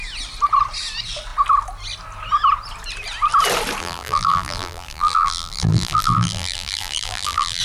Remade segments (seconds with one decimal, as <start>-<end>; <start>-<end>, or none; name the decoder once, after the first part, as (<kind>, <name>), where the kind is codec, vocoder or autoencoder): 3.8-7.6 (vocoder, BigVGAN v2)